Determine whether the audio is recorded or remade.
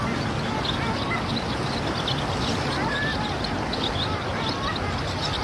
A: recorded